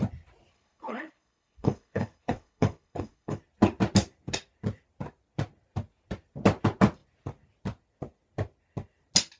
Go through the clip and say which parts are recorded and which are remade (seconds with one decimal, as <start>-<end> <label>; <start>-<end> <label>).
0.0-0.5 recorded; 0.5-3.4 remade; 3.4-9.4 recorded